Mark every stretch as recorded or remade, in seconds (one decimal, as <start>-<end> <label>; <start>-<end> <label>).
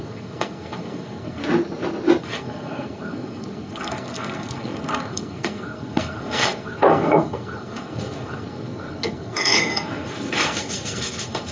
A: 0.0-1.4 remade; 1.4-2.2 recorded; 2.2-11.5 remade